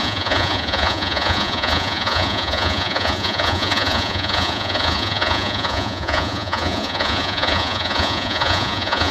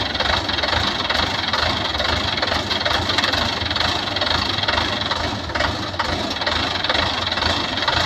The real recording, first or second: second